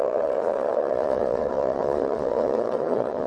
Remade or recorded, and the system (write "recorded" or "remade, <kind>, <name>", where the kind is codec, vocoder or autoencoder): remade, vocoder, Vocos